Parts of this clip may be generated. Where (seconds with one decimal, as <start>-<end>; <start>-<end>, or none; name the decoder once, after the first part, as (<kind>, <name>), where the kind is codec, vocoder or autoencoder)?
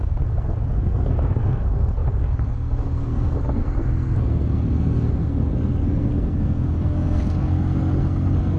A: 0.0-8.6 (codec, SNAC)